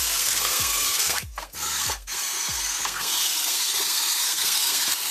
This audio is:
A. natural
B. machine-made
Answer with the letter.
B